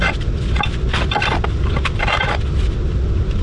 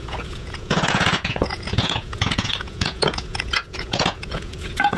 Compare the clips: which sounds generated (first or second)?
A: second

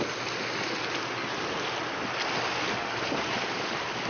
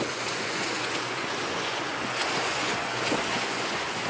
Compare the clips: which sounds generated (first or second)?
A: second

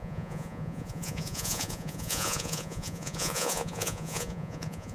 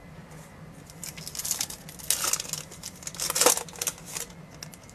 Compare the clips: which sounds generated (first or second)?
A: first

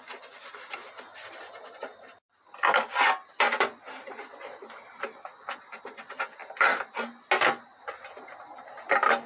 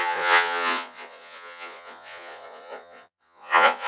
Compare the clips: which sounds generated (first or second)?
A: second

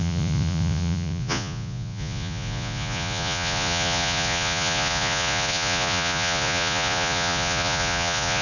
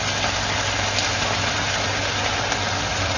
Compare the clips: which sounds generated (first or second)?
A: first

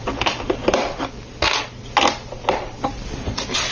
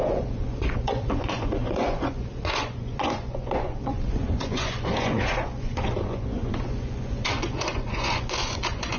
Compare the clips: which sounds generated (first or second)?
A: second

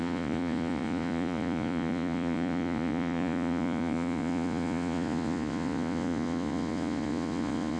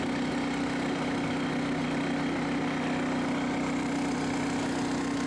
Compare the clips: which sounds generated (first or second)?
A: first